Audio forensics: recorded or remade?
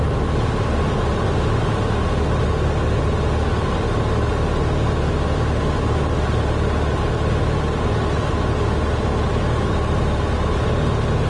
recorded